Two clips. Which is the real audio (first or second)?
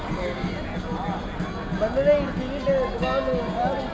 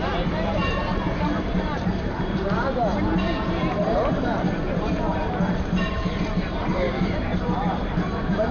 first